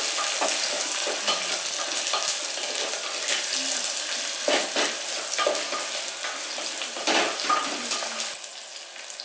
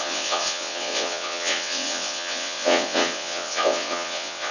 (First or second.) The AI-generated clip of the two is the second